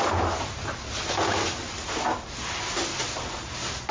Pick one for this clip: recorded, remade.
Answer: recorded